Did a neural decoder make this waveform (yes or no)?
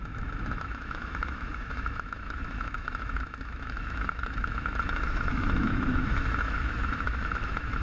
yes